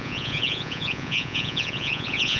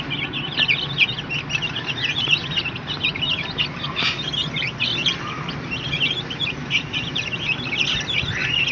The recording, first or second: second